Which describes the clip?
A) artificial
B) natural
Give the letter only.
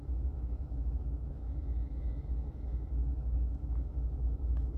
A